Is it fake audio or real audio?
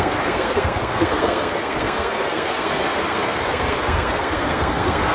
fake